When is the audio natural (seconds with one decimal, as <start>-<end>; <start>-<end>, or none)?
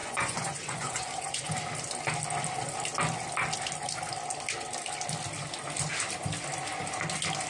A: 1.5-7.5